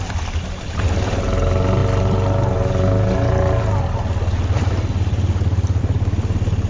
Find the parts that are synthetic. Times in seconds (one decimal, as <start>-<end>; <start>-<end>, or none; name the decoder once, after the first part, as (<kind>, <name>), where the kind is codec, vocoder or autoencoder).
none